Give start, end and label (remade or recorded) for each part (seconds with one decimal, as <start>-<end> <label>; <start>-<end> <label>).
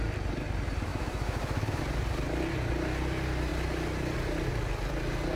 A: 0.0-0.9 recorded; 0.9-1.8 remade; 1.8-5.4 recorded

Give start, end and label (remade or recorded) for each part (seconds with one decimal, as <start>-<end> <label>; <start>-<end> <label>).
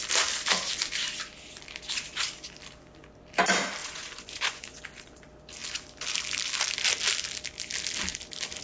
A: 0.0-3.8 recorded; 3.8-4.8 remade; 4.8-8.6 recorded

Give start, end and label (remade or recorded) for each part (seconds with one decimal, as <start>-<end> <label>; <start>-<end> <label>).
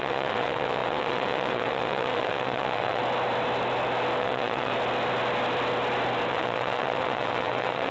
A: 0.0-3.0 remade; 3.0-4.2 recorded; 4.2-4.7 remade; 4.7-6.3 recorded; 6.3-7.9 remade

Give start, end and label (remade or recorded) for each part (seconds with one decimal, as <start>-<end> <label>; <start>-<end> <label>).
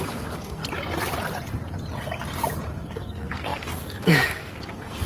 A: 0.0-0.6 remade; 0.6-2.9 recorded; 2.9-5.1 remade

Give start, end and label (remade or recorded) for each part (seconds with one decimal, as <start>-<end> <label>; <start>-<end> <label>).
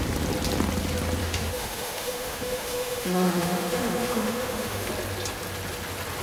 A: 0.0-1.2 recorded; 1.2-4.9 remade; 4.9-6.2 recorded